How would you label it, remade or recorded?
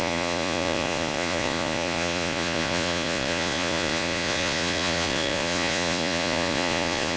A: remade